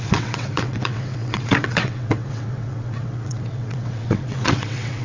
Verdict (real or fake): fake